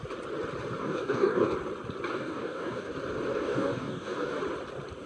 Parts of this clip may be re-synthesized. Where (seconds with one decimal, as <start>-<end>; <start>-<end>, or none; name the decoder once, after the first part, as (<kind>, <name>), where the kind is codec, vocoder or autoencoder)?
0.8-1.5 (codec, DAC); 2.1-2.9; 3.3-4.4